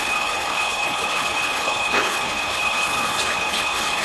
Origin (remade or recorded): remade